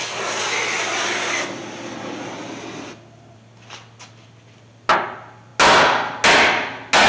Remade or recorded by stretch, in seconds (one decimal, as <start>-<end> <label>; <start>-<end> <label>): 0.0-7.1 recorded